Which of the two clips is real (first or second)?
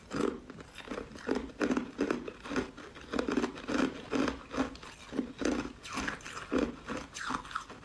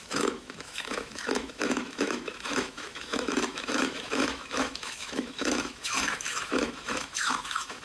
first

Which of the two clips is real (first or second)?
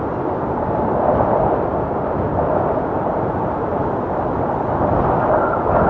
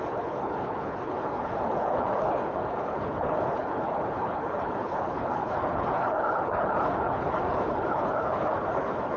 first